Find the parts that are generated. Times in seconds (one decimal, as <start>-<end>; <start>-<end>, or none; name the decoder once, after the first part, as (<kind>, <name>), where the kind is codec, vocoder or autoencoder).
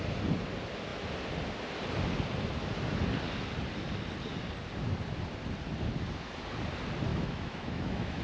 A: 7.1-8.2 (autoencoder, DAC-VAE)